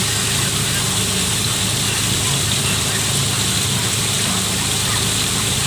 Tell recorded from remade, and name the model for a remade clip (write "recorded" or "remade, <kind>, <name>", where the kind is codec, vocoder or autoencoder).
recorded